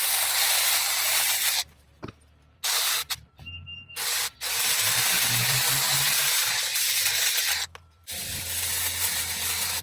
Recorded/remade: remade